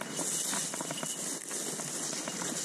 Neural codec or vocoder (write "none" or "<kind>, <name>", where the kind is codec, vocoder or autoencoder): none